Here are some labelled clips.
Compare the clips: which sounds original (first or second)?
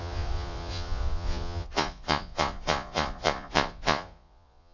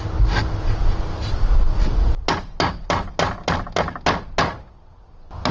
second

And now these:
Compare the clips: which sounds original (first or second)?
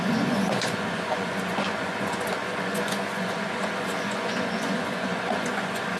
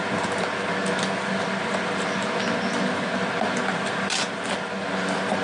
second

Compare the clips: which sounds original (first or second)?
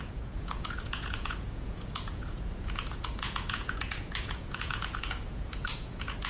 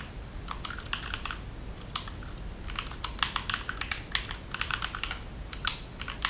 second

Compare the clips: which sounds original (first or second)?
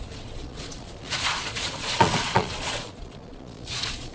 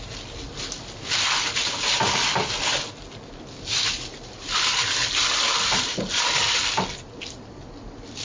second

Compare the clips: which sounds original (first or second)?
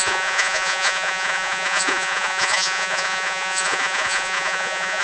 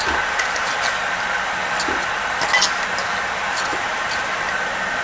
second